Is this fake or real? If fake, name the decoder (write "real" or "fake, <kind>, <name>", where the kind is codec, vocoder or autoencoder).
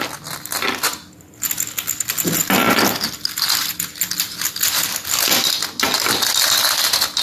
real